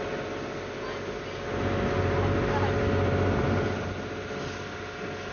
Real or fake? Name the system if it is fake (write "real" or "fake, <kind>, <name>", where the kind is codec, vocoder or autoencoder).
real